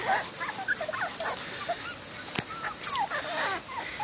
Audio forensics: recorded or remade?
recorded